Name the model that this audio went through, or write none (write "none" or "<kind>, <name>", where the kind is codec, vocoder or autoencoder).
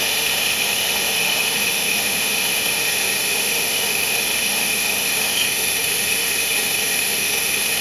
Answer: autoencoder, DAC-VAE